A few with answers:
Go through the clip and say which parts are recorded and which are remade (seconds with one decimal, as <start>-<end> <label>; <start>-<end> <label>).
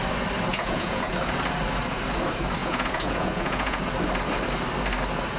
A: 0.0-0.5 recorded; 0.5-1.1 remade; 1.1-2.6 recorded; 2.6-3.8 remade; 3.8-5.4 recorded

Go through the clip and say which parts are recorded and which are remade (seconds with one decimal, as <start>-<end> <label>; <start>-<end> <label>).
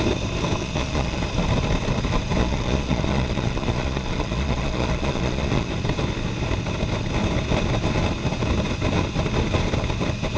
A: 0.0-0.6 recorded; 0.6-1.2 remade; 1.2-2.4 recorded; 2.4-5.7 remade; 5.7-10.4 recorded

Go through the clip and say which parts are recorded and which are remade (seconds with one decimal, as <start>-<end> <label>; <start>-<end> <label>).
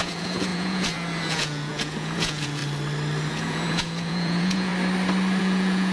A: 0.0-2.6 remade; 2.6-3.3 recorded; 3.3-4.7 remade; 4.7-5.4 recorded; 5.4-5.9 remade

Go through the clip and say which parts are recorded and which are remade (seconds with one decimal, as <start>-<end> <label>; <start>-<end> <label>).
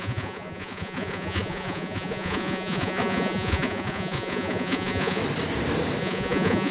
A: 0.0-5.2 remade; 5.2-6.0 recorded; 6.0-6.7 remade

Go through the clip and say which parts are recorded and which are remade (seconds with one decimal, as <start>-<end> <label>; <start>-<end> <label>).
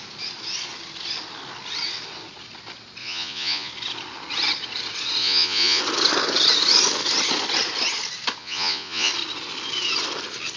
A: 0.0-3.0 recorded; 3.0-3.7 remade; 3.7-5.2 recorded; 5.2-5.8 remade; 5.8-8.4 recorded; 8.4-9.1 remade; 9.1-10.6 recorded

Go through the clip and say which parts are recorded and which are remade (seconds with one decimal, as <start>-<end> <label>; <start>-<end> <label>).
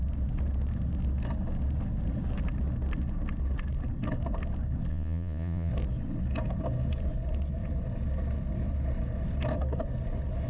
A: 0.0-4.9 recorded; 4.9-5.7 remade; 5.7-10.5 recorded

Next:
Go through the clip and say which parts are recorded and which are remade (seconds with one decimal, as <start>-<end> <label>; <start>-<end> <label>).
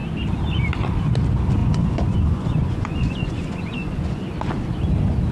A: 0.0-1.6 recorded; 1.6-4.5 remade; 4.5-5.3 recorded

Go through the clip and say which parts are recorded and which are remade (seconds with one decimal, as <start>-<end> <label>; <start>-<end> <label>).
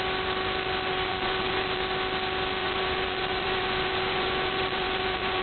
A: 0.0-0.9 recorded; 0.9-1.8 remade; 1.8-2.6 recorded; 2.6-5.4 remade